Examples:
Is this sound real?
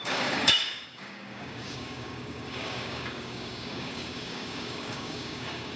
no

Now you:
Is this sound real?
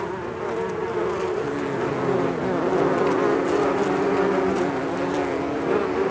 yes